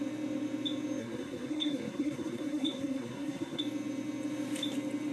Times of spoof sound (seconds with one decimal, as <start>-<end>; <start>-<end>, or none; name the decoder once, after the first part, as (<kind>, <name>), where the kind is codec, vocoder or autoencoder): 1.0-3.6 (codec, SNAC)

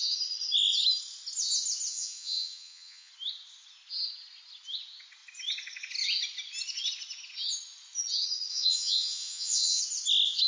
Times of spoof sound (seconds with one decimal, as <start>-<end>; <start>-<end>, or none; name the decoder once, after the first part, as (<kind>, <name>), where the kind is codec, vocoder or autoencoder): 1.9-3.1 (vocoder, Vocos); 8.5-9.8

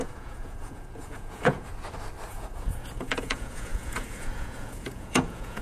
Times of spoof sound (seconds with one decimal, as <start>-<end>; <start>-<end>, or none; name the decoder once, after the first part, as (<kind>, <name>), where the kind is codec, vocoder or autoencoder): 0.0-1.7 (vocoder, Vocos); 2.3-5.6